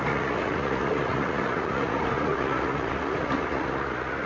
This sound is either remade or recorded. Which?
remade